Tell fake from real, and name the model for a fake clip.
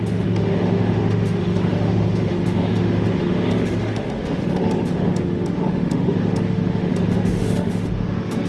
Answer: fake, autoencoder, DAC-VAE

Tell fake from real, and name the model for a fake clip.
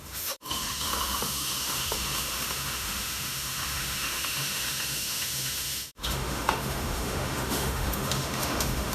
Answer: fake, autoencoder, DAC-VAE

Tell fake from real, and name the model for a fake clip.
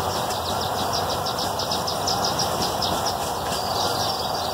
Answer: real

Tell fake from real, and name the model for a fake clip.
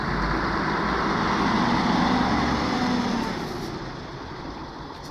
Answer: real